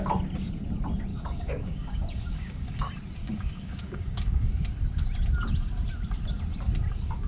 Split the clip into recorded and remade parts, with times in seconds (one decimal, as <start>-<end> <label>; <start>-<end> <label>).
0.0-1.1 recorded; 1.1-2.8 remade; 2.8-3.2 recorded; 3.2-4.5 remade; 4.5-7.3 recorded